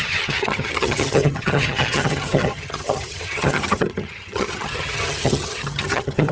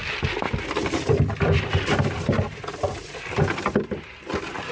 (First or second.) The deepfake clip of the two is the first